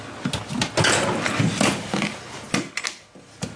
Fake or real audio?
real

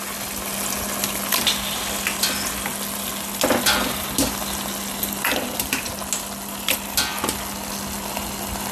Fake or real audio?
real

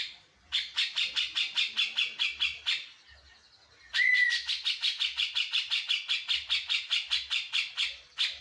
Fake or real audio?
fake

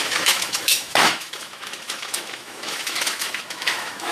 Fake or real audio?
fake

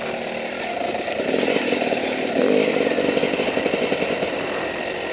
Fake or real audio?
real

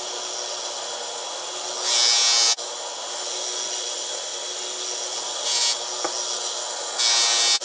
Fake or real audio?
real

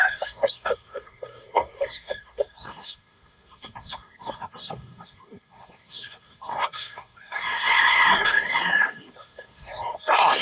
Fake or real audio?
fake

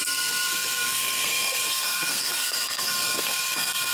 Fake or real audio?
fake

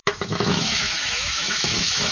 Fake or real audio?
fake